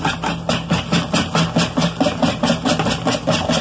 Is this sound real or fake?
real